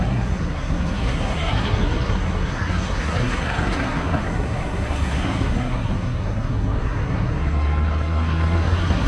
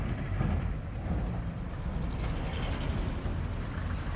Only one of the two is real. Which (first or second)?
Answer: second